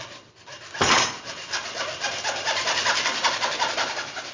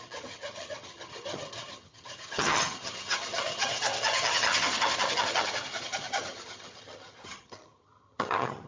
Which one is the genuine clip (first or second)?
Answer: first